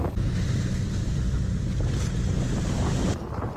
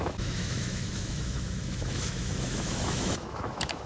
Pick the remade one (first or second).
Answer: second